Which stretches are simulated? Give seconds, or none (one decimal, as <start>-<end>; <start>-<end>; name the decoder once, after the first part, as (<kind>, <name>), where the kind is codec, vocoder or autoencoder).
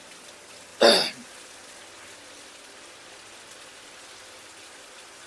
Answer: none